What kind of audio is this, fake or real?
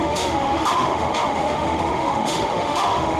fake